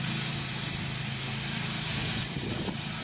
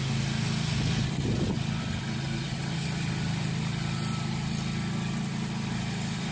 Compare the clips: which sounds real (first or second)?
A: second